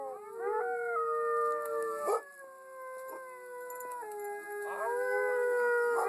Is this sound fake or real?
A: real